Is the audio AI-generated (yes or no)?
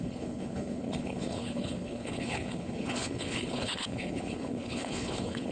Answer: yes